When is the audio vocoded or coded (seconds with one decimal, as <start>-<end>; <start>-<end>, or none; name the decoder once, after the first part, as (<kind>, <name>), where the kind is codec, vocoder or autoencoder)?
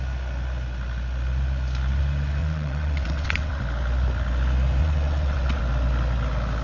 2.4-3.6 (vocoder, WaveNeXt); 4.8-5.6